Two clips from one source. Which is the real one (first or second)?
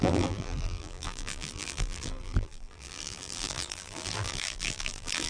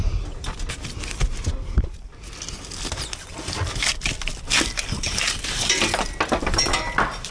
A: second